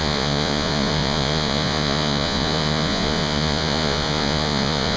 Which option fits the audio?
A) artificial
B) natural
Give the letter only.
A